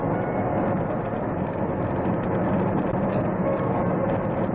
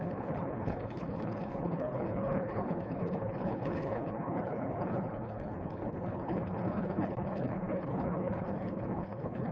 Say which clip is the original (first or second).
first